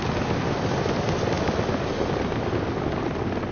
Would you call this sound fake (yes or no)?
no